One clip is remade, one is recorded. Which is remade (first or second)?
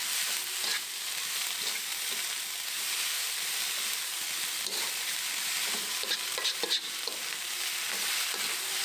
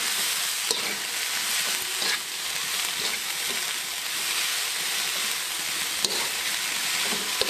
first